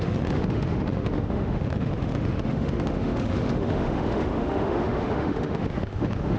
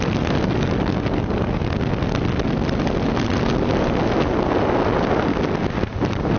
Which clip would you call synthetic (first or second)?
first